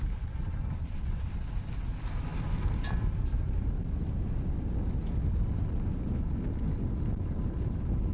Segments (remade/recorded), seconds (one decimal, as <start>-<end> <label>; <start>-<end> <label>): 0.0-8.1 recorded